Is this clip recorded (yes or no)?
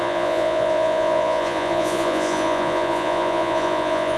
no